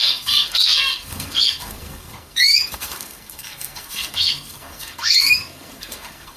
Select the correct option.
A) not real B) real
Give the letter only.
A